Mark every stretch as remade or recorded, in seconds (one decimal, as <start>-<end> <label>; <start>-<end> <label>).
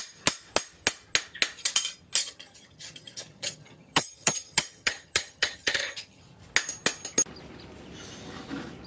0.0-2.2 recorded; 2.2-6.2 remade; 6.2-8.9 recorded